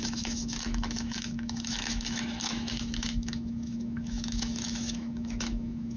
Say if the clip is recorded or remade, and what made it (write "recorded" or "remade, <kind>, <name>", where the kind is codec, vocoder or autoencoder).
remade, autoencoder, DAC-VAE